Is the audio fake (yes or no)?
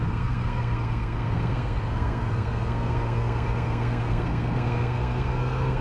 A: yes